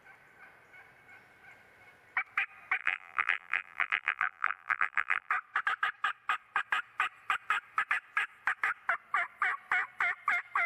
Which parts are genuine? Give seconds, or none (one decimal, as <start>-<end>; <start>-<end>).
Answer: 0.0-2.8; 5.3-10.7